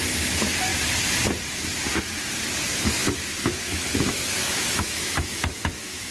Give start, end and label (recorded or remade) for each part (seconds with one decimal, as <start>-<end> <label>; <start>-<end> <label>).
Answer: 0.0-3.0 recorded; 3.0-6.1 remade